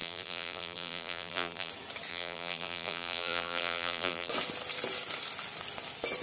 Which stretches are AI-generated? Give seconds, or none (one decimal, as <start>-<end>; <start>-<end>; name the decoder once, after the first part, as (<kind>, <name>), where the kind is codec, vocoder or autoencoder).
0.0-1.7 (vocoder, BigVGAN v2); 2.1-4.3